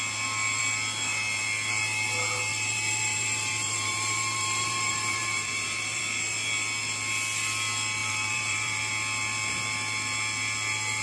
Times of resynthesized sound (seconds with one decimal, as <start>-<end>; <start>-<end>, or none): 2.5-6.0; 8.0-8.9